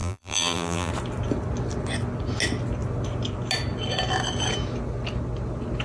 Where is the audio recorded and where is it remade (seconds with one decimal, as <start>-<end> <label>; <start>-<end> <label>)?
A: 0.0-0.9 remade; 0.9-5.8 recorded